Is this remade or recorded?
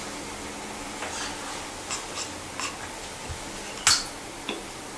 recorded